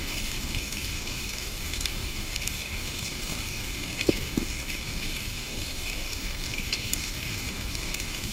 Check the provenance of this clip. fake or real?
fake